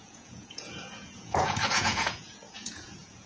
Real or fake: fake